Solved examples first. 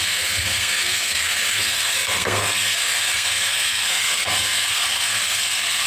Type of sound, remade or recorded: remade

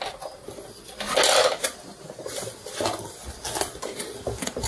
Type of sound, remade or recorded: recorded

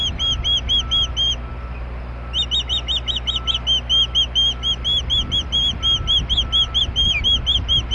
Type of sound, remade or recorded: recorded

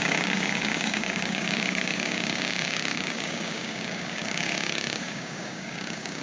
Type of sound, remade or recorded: remade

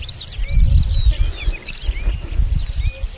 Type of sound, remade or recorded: recorded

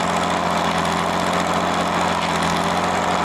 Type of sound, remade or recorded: recorded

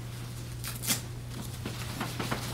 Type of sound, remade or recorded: recorded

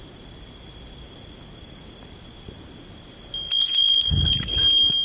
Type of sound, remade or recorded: recorded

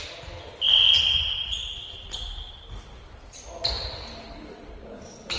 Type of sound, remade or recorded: recorded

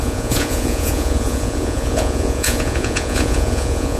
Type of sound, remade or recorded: remade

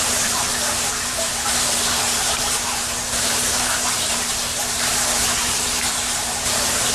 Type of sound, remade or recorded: remade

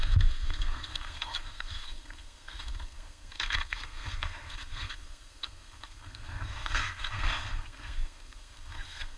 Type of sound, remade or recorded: remade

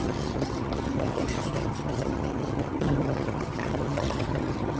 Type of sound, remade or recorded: remade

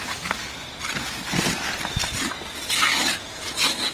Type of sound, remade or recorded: recorded